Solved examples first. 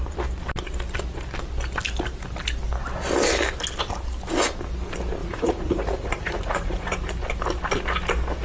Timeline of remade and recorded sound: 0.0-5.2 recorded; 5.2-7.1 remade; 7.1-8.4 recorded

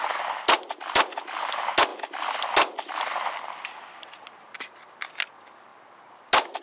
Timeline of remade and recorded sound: 0.0-6.6 recorded

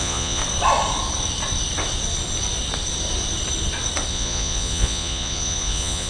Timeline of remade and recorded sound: 0.0-0.4 remade; 0.4-4.1 recorded; 4.1-6.1 remade

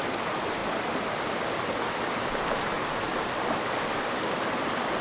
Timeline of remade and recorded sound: 0.0-5.0 recorded

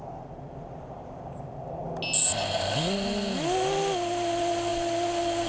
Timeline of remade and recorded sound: 0.0-5.5 recorded

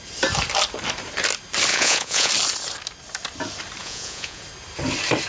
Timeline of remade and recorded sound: 0.0-1.7 recorded; 1.7-2.3 remade; 2.3-3.8 recorded; 3.8-4.4 remade; 4.4-5.3 recorded